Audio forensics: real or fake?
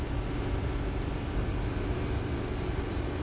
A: real